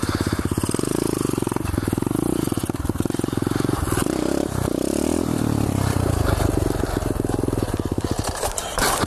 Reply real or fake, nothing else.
fake